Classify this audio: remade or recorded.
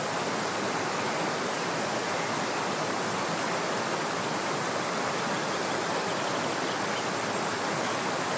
recorded